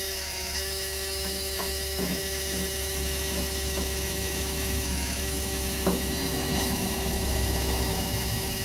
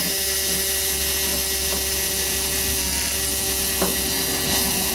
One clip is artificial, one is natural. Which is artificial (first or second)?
first